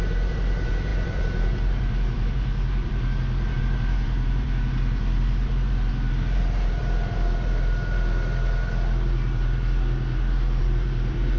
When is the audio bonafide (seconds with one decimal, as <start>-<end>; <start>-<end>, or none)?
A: 6.8-10.6